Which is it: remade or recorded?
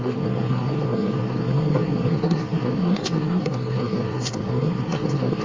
remade